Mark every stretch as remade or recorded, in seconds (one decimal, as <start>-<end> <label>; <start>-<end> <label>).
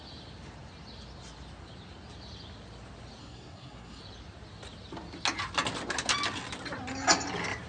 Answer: 0.0-3.2 recorded; 3.2-4.0 remade; 4.0-7.7 recorded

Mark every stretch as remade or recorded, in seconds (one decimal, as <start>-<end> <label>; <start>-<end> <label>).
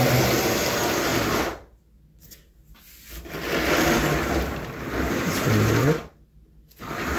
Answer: 0.0-7.2 recorded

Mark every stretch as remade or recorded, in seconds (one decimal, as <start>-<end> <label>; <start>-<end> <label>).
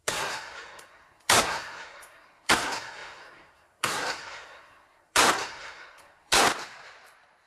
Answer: 0.0-6.5 remade; 6.5-7.5 recorded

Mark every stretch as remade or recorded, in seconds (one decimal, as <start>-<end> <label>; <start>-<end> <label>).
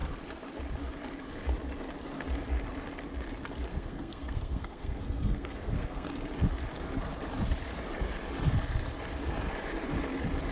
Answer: 0.0-3.7 recorded; 3.7-6.1 remade; 6.1-10.5 recorded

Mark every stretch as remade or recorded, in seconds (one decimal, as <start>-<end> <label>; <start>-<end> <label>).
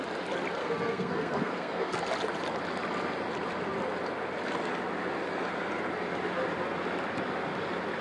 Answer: 0.0-0.6 recorded; 0.6-2.0 remade; 2.0-8.0 recorded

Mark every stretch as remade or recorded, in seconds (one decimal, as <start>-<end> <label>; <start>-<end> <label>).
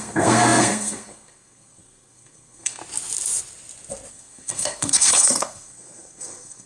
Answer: 0.0-2.8 remade; 2.8-4.1 recorded; 4.1-6.7 remade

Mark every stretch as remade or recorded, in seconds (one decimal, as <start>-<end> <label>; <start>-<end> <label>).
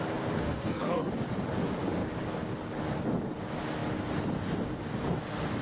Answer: 0.0-0.4 recorded; 0.4-1.1 remade; 1.1-5.6 recorded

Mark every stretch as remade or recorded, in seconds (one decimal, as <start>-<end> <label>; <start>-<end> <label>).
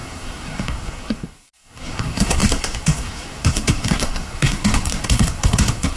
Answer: 0.0-6.0 remade